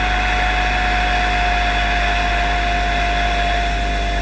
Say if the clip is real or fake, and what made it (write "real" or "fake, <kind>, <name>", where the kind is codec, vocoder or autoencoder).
real